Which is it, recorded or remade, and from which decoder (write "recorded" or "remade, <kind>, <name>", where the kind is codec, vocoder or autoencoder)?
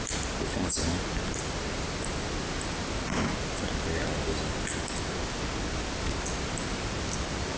recorded